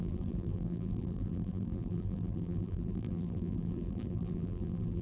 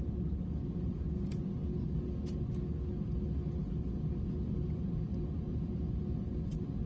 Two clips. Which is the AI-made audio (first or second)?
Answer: first